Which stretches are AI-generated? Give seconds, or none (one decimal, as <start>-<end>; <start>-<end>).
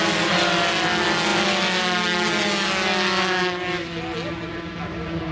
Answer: none